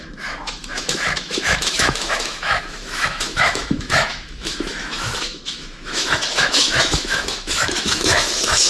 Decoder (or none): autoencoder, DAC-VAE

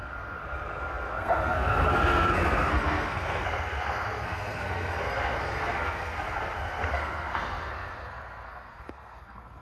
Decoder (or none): codec, SNAC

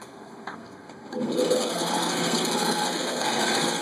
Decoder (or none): codec, SNAC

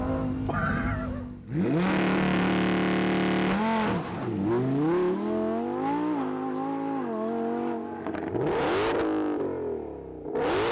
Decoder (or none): none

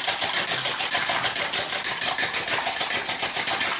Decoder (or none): none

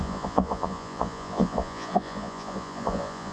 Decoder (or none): vocoder, Vocos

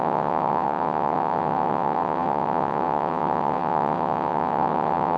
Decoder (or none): vocoder, WaveNeXt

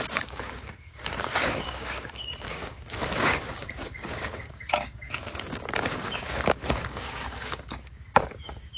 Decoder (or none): codec, DAC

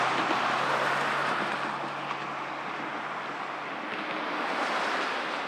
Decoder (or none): none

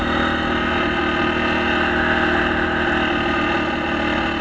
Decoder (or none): none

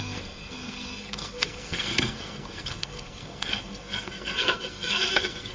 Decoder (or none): codec, SNAC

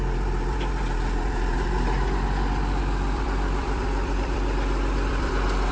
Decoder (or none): vocoder, BigVGAN v2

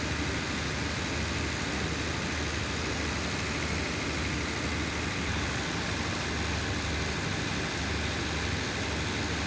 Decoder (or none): none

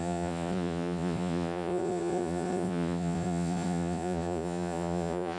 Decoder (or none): vocoder, Vocos